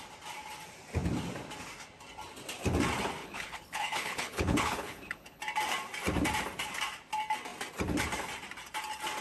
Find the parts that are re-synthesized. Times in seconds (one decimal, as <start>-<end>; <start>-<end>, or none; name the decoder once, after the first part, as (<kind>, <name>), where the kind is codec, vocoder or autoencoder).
3.2-5.4 (codec, HILCodec)